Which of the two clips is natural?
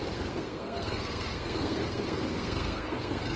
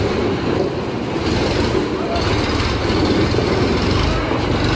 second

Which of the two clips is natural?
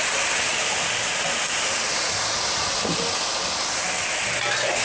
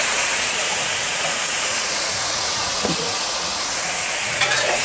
first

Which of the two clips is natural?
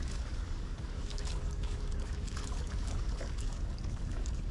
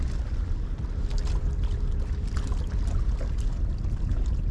second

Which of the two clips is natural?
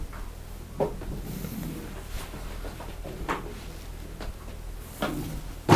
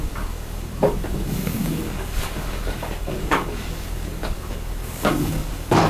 first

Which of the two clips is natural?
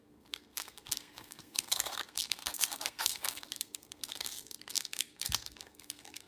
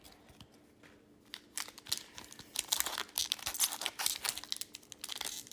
second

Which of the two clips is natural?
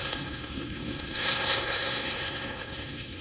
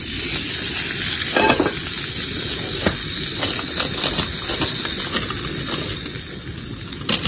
second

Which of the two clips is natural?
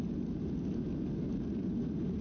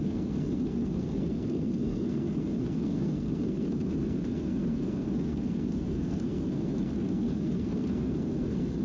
first